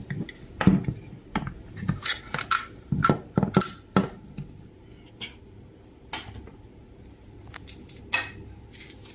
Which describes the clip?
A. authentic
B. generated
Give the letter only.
A